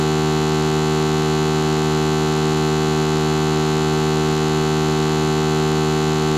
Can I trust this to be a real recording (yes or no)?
yes